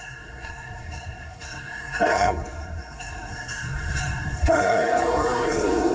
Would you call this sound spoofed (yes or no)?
yes